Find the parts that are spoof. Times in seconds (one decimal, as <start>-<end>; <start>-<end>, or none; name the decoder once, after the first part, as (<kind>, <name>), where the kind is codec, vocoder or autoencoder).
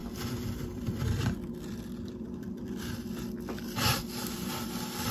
0.0-3.1 (vocoder, BigVGAN v2); 3.9-4.5